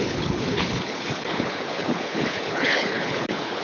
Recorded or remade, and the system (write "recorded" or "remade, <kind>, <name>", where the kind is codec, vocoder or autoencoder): remade, codec, HILCodec